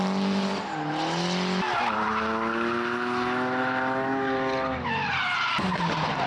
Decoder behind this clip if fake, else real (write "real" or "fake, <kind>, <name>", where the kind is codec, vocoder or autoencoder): real